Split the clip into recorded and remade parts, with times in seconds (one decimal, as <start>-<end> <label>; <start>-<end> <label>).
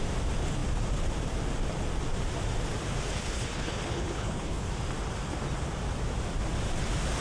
0.0-3.1 recorded; 3.1-4.7 remade; 4.7-7.2 recorded